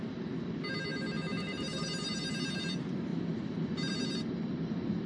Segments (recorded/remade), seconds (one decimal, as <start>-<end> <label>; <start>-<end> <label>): 0.0-5.1 recorded